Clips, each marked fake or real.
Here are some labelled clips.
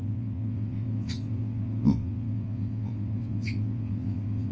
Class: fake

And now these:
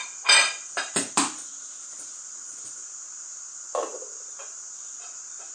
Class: real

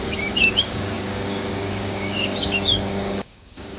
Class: fake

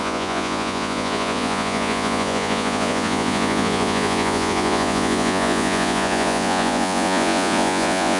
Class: fake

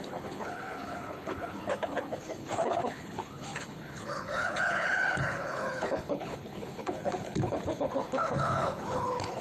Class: fake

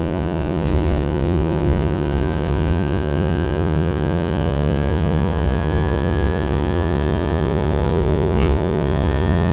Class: fake